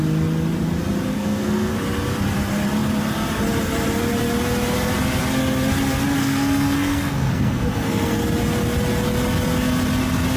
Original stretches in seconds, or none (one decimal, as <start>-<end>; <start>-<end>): 0.0-1.1; 1.7-6.2; 8.2-10.4